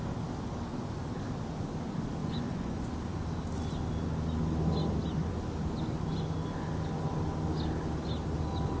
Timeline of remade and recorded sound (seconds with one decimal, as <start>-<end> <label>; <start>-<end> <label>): 0.0-2.2 recorded; 2.2-2.9 remade; 2.9-8.8 recorded